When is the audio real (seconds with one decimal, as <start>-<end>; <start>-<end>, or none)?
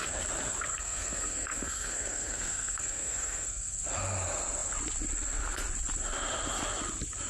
0.0-0.7; 3.8-7.3